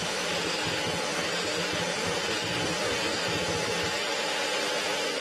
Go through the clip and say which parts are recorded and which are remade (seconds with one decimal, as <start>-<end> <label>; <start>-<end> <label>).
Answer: 0.0-5.2 recorded